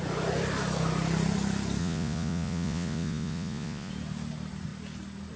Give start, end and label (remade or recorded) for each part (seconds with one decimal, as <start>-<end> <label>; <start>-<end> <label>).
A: 0.0-1.8 recorded; 1.8-3.9 remade; 3.9-5.4 recorded